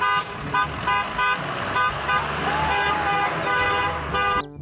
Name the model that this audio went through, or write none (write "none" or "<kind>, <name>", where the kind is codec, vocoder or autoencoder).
none